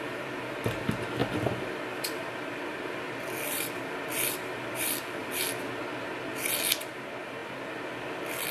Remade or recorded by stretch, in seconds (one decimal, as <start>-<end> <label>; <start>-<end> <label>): 0.0-1.2 recorded; 1.2-5.4 remade; 5.4-8.5 recorded